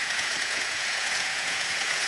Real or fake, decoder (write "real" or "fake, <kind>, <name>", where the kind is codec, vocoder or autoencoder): fake, vocoder, Vocos